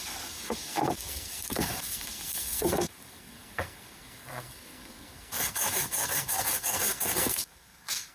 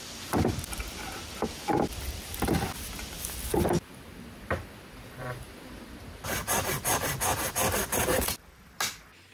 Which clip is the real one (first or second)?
second